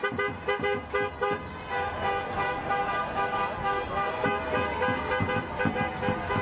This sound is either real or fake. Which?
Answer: real